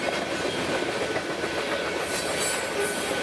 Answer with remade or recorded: recorded